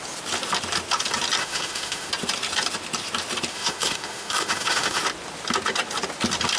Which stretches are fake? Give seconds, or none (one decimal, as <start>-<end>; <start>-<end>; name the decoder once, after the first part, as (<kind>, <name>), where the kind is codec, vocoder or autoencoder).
1.4-2.1 (autoencoder, DAC-VAE); 3.5-5.0